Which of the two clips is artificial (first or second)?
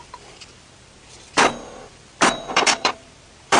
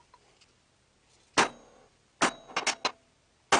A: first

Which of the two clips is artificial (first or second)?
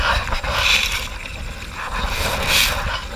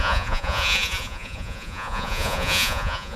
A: second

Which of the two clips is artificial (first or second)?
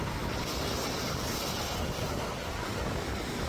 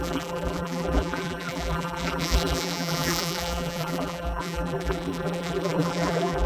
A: second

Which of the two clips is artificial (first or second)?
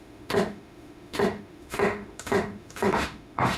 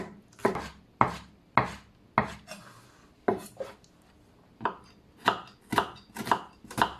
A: first